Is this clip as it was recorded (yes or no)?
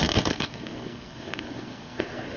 no